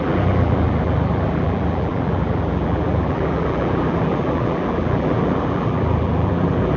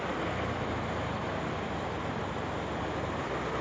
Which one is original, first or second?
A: second